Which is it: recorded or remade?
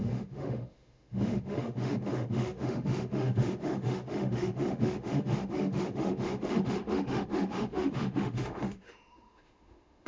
remade